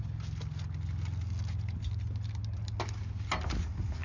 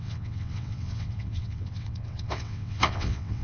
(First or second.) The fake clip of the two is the second